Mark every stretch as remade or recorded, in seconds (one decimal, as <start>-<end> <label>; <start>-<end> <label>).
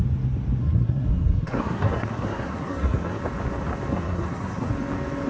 0.0-0.6 recorded; 0.6-3.2 remade; 3.2-3.9 recorded; 3.9-4.7 remade; 4.7-5.3 recorded